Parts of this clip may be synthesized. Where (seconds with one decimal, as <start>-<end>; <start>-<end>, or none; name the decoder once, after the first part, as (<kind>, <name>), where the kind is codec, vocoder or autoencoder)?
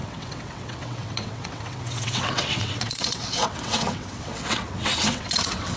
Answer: 0.0-5.8 (vocoder, WaveNeXt)